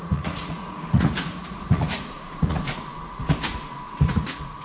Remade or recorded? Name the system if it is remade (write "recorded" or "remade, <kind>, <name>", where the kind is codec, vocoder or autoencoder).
remade, vocoder, Vocos